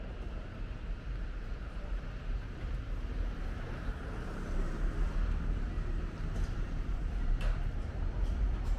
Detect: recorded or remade remade